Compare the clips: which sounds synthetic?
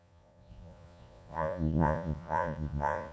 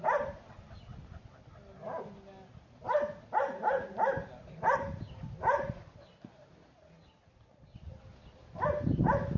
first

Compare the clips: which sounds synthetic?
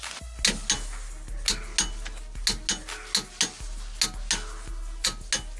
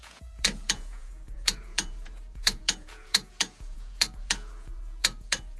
second